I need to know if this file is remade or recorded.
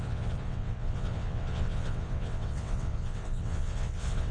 remade